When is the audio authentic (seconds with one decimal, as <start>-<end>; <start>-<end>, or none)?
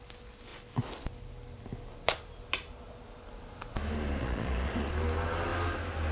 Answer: 0.0-4.2; 4.9-6.1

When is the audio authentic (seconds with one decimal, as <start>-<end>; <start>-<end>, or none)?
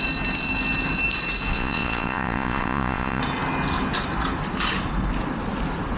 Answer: 0.0-1.5; 3.2-6.0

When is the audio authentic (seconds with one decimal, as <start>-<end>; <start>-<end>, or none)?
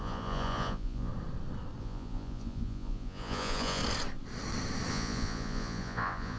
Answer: 1.1-1.8; 3.8-4.9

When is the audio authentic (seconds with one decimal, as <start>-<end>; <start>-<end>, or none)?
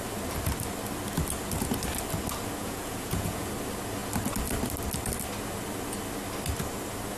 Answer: 0.0-2.6; 3.5-7.2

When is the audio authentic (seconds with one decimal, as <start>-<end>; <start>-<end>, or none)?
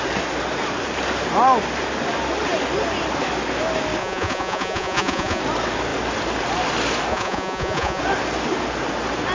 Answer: 0.0-4.0; 5.4-7.1; 8.0-9.3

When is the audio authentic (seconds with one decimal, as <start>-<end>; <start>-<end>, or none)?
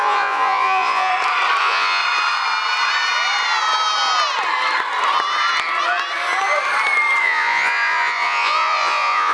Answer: 1.1-1.6; 2.0-7.2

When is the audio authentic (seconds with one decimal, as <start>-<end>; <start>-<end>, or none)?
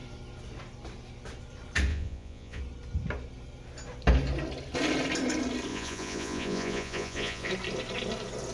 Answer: 0.0-1.9; 2.6-5.7; 7.5-8.5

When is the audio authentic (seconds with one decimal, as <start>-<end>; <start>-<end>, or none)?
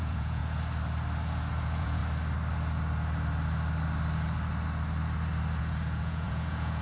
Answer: 0.4-1.5; 2.0-5.6